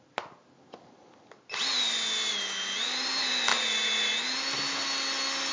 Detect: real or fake real